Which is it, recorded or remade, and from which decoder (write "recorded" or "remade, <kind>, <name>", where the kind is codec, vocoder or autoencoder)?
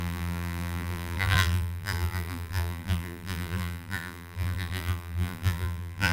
remade, vocoder, BigVGAN v2